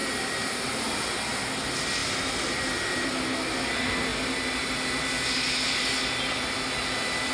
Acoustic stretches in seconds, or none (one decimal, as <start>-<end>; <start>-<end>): 1.0-2.0; 3.1-7.3